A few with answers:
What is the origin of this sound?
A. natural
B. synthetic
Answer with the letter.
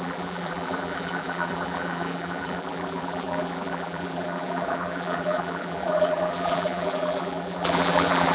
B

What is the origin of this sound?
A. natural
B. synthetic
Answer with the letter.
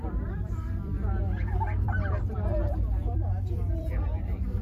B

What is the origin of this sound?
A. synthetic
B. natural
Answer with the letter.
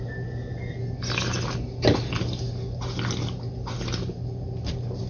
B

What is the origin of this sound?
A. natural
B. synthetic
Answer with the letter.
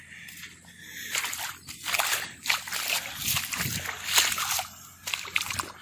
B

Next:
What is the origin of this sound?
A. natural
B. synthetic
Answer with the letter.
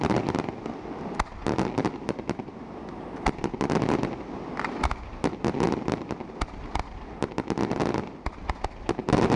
A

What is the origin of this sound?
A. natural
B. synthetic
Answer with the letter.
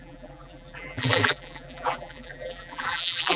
B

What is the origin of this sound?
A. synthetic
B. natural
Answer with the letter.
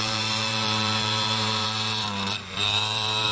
A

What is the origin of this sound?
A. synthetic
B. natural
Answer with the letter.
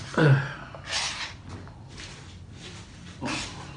B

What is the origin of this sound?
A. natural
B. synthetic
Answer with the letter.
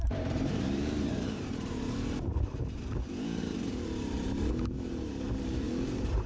B